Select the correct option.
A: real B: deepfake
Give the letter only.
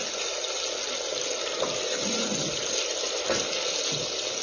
A